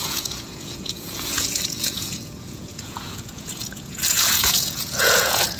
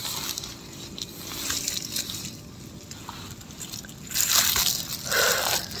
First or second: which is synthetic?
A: first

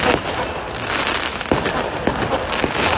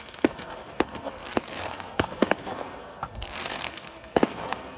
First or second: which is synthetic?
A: second